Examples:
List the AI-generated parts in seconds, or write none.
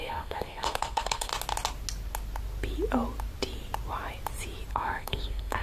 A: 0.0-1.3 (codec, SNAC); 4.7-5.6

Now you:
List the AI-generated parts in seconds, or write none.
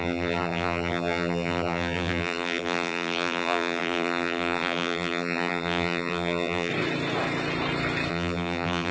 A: 0.0-6.7 (vocoder, BigVGAN v2); 8.1-8.9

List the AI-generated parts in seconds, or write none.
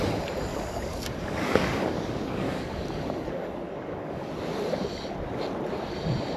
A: 0.5-4.3 (codec, DAC)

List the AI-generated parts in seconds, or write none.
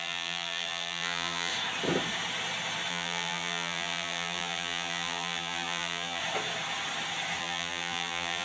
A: 0.0-1.5 (vocoder, BigVGAN v2); 2.9-6.2; 7.4-8.4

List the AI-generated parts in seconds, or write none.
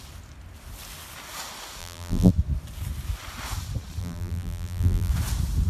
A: 1.8-2.3 (vocoder, BigVGAN v2); 4.0-5.1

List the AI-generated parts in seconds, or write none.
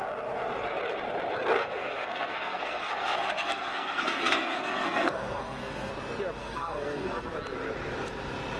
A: 1.6-5.9 (codec, SNAC); 6.4-7.3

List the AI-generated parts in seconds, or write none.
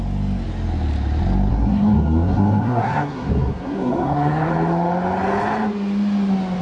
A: 1.5-4.5 (codec, SNAC)